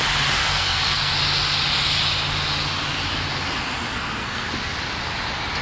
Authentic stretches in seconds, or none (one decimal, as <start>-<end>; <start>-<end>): 0.0-0.4; 1.1-3.9; 4.5-5.6